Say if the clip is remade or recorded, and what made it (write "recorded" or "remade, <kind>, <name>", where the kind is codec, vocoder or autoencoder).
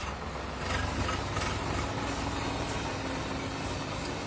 recorded